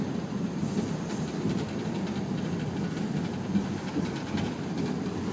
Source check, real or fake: real